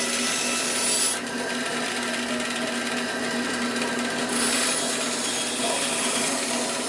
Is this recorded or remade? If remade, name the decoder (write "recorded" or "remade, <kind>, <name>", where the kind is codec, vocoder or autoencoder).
recorded